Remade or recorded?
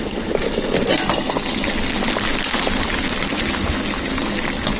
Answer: recorded